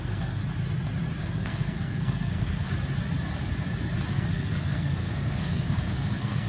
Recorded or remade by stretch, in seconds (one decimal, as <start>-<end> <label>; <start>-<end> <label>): 0.0-0.4 remade; 0.4-1.2 recorded; 1.2-2.7 remade; 2.7-4.1 recorded; 4.1-6.5 remade